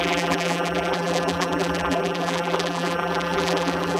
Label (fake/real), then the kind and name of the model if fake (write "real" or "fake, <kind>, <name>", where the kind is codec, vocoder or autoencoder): fake, vocoder, BigVGAN v2